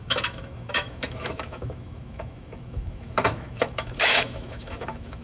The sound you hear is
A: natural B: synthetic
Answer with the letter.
B